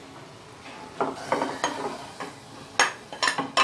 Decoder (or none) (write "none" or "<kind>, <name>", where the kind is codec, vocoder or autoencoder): none